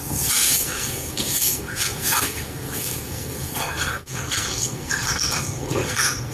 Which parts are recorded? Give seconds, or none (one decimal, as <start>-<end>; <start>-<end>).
none